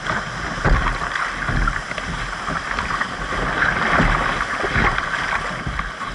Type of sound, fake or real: real